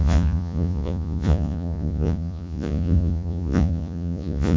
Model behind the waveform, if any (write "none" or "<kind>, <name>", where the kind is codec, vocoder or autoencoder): vocoder, Vocos